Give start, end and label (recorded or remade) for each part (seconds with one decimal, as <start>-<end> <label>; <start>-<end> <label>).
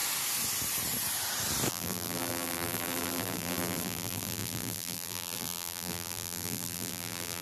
0.0-1.7 recorded; 1.7-7.4 remade